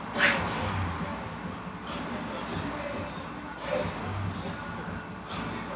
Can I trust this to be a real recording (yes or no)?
yes